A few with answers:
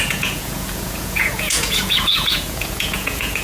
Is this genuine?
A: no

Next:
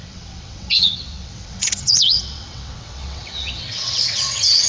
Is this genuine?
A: no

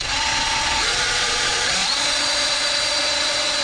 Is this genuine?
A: no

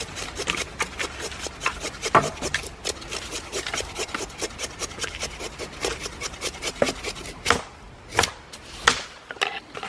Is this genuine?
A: yes